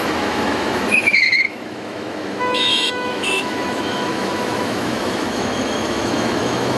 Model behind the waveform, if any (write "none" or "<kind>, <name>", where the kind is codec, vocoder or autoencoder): autoencoder, DAC-VAE